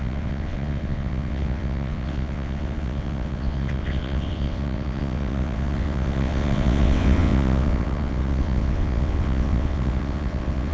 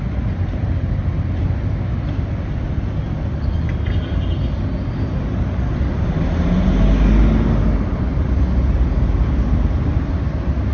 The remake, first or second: first